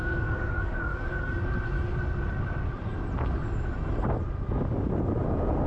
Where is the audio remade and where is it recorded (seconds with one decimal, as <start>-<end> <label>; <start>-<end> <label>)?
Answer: 0.0-1.2 remade; 1.2-5.7 recorded